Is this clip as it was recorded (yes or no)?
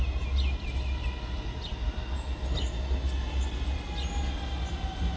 yes